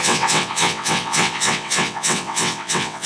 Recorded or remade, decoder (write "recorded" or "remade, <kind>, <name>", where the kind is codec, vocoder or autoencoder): remade, vocoder, WaveNeXt